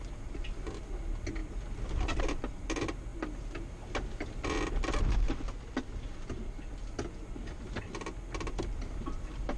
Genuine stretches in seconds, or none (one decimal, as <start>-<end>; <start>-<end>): 0.0-9.6